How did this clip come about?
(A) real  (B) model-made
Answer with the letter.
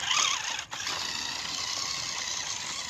A